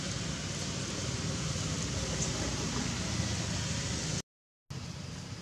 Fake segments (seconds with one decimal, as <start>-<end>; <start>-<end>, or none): none